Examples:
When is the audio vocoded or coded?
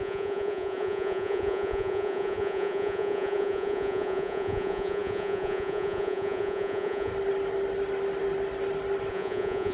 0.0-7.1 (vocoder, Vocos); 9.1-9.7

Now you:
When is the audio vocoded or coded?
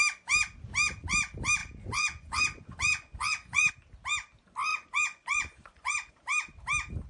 1.6-3.7 (vocoder, Vocos); 4.7-6.1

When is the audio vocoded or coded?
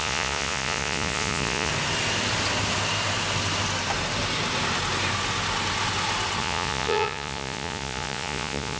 0.0-1.7 (vocoder, Vocos); 6.4-8.8